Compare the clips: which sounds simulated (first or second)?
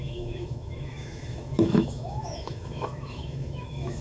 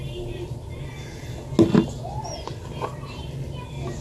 first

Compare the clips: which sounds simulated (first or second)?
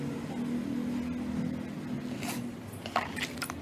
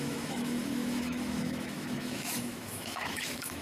second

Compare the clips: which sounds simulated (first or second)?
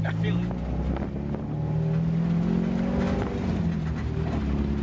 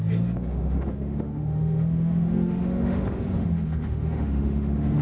second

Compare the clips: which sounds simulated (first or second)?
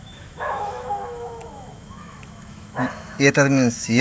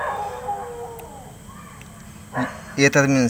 first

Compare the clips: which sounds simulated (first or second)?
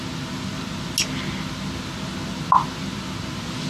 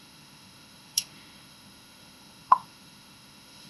second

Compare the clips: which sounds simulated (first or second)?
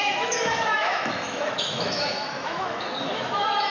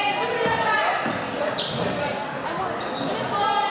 first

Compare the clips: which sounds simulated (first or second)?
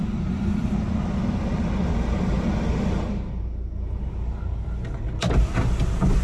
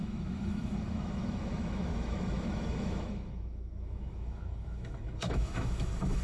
second